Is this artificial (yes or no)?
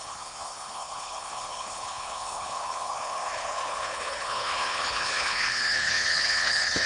yes